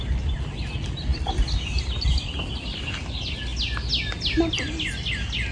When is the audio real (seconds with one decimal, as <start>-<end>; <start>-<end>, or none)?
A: 0.0-5.5